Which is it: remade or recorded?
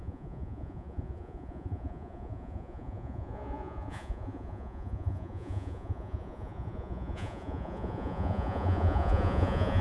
remade